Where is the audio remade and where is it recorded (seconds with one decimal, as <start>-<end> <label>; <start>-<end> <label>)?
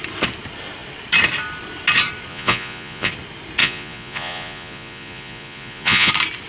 0.0-2.3 recorded; 2.3-3.1 remade; 3.1-3.6 recorded; 3.6-6.1 remade; 6.1-6.5 recorded